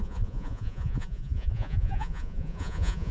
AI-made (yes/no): yes